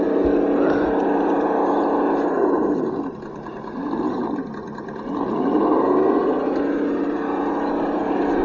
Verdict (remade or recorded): recorded